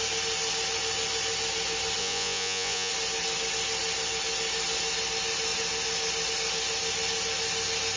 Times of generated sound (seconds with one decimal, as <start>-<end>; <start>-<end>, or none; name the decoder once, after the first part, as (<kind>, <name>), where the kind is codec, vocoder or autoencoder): 2.0-2.9 (vocoder, Vocos)